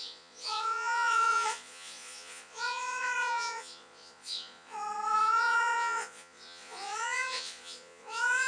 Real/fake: fake